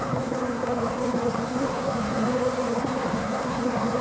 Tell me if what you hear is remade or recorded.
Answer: remade